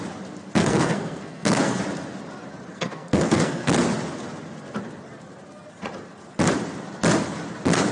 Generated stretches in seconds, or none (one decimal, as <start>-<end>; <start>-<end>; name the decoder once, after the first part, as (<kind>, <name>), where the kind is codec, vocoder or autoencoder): 0.6-1.8 (codec, SNAC); 2.7-3.7